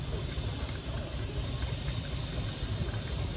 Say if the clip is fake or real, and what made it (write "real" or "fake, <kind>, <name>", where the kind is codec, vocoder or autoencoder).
real